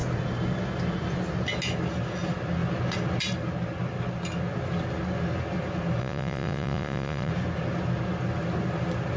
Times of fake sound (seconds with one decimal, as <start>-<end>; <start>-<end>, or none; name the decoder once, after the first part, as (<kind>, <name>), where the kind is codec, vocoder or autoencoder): 6.0-7.3 (vocoder, Vocos)